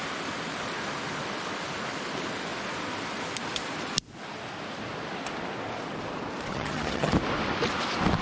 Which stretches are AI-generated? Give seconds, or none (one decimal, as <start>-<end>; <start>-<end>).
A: 6.5-7.1